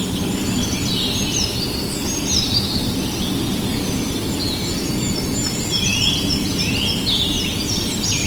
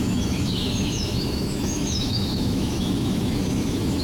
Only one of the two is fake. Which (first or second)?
second